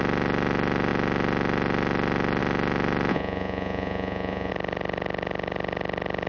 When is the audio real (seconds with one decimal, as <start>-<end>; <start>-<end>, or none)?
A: 0.0-3.1; 4.5-6.3